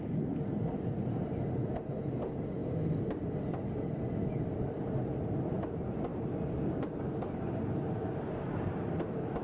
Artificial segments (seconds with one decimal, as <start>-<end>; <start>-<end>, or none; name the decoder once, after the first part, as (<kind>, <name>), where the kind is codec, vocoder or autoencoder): none